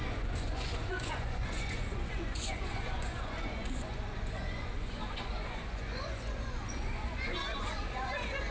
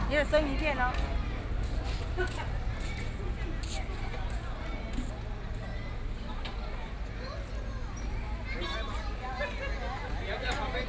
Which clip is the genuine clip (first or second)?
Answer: second